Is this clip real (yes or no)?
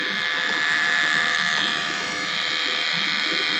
no